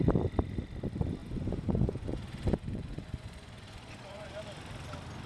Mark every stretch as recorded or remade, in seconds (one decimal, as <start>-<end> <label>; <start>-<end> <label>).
0.0-1.2 recorded; 1.2-4.4 remade; 4.4-5.3 recorded